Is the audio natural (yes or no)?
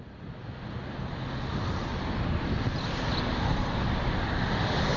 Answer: yes